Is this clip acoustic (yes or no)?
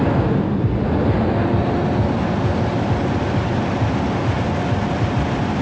yes